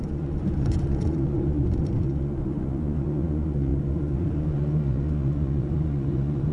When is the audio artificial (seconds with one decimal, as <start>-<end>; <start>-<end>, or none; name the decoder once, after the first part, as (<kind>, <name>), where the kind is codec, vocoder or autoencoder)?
0.0-6.5 (vocoder, Vocos)